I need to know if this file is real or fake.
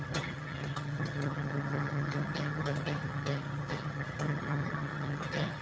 fake